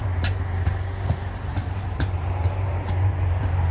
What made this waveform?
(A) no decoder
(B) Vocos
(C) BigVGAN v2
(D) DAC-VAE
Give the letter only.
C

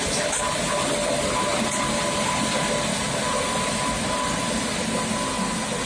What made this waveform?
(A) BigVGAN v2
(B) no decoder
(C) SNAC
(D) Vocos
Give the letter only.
B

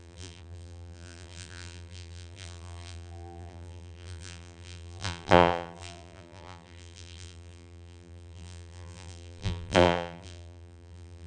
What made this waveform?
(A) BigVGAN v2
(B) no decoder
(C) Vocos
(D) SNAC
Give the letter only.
A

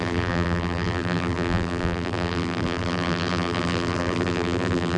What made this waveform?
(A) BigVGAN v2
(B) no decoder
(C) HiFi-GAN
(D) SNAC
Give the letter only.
A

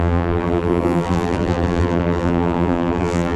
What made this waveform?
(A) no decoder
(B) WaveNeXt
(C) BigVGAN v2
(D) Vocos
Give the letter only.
C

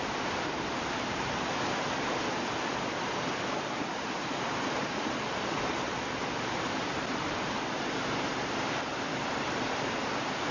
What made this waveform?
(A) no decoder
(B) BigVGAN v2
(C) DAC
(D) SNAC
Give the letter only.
B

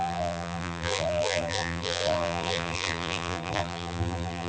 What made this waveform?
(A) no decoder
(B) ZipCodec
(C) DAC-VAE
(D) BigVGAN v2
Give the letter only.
D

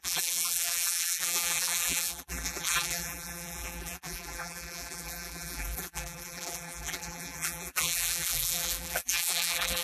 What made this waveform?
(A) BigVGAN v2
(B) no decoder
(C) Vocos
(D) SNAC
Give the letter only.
A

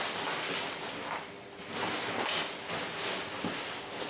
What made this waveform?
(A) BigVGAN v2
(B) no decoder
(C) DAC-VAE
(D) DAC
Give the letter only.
B